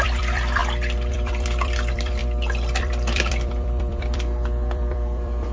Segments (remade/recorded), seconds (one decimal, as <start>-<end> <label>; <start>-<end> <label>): 0.0-0.6 remade; 0.6-1.1 recorded; 1.1-2.2 remade; 2.2-2.8 recorded; 2.8-5.5 remade